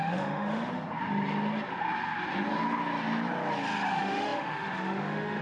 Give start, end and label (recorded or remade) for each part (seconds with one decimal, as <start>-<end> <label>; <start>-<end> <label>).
0.0-0.7 remade; 0.7-3.9 recorded; 3.9-5.4 remade